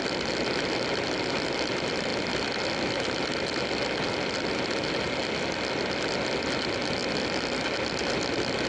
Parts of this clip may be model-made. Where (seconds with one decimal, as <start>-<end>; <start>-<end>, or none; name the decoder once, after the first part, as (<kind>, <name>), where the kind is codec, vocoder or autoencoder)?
none